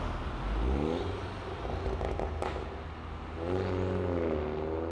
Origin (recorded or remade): recorded